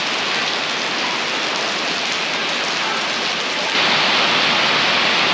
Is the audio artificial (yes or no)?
no